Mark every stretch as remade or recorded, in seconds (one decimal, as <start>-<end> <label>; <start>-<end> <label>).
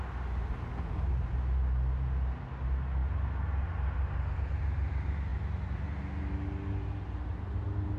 0.0-8.0 recorded